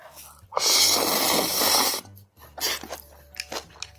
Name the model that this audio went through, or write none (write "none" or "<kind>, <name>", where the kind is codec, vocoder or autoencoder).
none